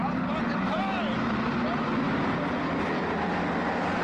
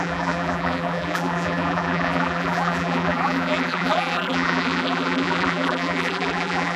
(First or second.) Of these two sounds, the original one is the first